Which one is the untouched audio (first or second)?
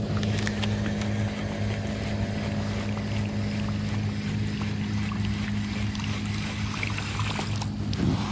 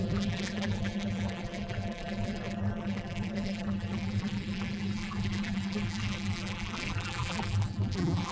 first